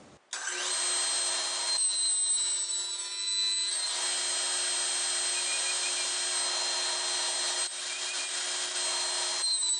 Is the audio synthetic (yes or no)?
no